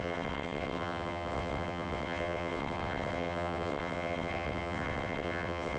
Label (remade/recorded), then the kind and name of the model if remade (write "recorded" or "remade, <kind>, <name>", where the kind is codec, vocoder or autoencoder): remade, vocoder, WaveNeXt